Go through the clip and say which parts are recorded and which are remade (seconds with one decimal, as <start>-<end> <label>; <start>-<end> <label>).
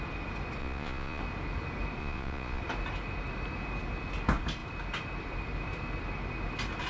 0.0-0.6 recorded; 0.6-1.2 remade; 1.2-2.0 recorded; 2.0-2.6 remade; 2.6-6.9 recorded